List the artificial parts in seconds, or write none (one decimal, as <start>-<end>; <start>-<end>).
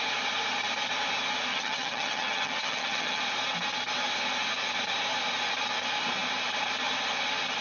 1.5-3.2